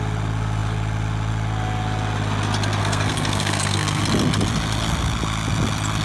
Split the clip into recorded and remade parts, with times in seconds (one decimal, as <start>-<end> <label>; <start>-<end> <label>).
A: 0.0-2.8 recorded; 2.8-4.0 remade; 4.0-6.0 recorded